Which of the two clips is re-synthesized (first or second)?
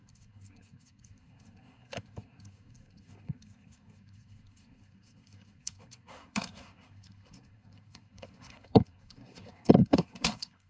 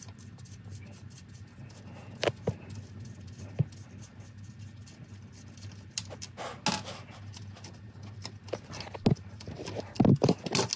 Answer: first